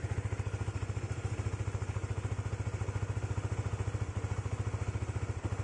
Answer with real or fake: real